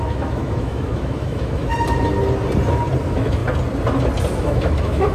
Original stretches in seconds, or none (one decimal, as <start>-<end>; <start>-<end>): 1.7-3.0; 3.4-4.4